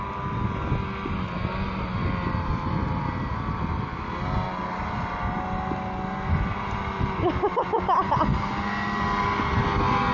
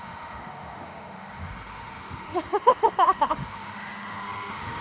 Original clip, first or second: first